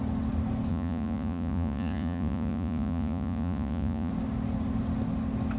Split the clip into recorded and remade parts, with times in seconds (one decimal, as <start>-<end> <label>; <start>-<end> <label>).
0.0-0.7 recorded; 0.7-4.1 remade; 4.1-5.6 recorded